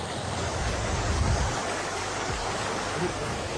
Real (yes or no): no